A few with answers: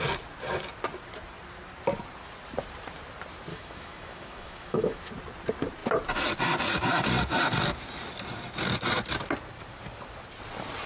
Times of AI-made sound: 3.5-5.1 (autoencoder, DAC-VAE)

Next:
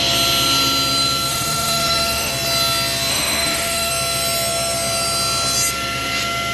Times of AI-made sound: 1.3-2.3 (autoencoder, DAC-VAE); 3.1-3.9

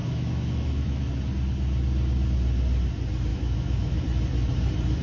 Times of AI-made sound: 0.0-1.1 (autoencoder, DAC-VAE); 3.3-4.0

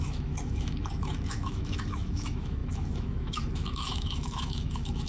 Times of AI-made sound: 0.0-5.1 (autoencoder, DAC-VAE)

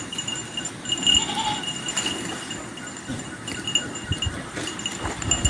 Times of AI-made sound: none

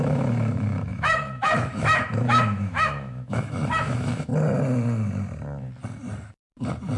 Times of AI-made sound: 0.0-4.3 (autoencoder, DAC-VAE)